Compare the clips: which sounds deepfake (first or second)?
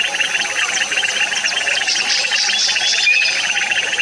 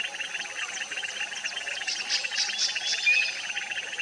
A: first